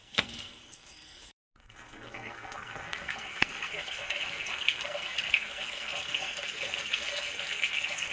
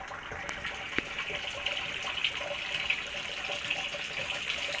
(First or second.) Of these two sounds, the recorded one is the second